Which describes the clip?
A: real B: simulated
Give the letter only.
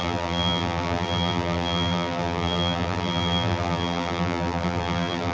B